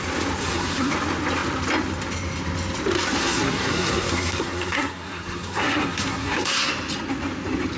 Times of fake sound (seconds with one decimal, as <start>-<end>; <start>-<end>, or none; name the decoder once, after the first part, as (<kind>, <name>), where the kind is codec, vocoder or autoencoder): 0.4-0.9 (codec, SNAC); 3.2-6.7